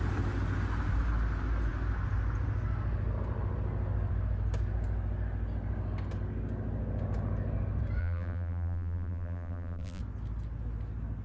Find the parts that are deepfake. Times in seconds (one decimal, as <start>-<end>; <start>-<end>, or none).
8.0-10.0